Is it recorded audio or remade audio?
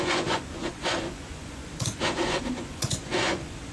remade